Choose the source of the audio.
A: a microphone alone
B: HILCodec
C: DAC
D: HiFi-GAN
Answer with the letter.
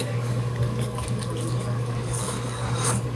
C